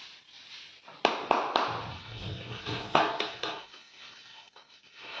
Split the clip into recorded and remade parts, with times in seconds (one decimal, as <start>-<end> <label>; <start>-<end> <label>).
0.0-1.9 recorded; 1.9-5.2 remade